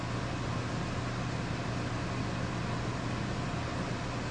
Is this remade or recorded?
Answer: recorded